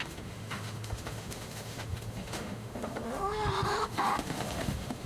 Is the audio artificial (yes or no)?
yes